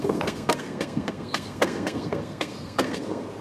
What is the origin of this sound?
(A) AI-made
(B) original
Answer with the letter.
A